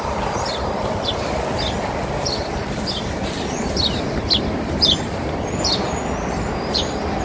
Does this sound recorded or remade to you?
recorded